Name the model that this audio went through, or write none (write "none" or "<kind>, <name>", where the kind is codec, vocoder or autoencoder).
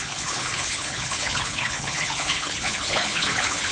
codec, HILCodec